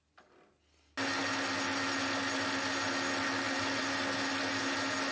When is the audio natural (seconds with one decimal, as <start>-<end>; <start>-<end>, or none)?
0.0-5.1